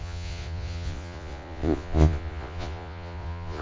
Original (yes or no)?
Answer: no